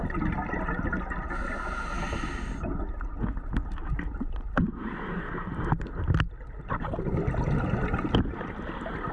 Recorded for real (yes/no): yes